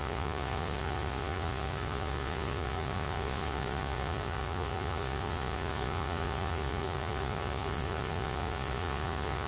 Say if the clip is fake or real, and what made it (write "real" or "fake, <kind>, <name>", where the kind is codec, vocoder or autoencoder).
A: fake, vocoder, Vocos